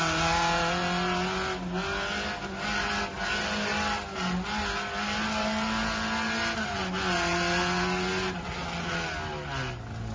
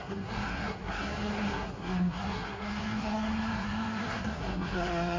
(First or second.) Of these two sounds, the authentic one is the first